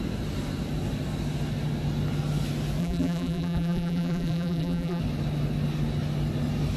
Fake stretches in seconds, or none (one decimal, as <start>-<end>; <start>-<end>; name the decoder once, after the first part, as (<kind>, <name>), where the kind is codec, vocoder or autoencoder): 2.8-5.0 (vocoder, BigVGAN v2)